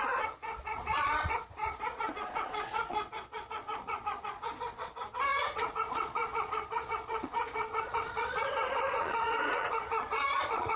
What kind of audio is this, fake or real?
fake